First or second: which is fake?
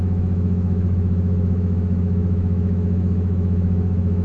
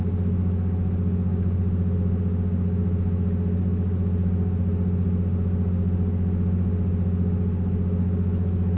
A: first